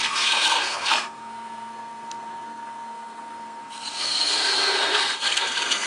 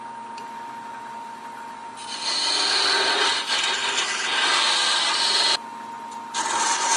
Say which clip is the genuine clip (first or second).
second